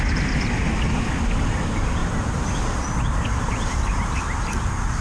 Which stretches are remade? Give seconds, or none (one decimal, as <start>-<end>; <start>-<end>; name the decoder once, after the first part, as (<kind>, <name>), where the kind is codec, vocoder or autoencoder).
2.0-5.0 (vocoder, BigVGAN v2)